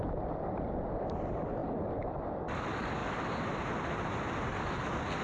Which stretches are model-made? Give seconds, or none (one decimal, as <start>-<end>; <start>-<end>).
none